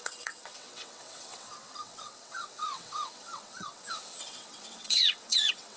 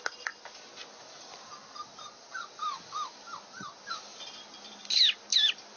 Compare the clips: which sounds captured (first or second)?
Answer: second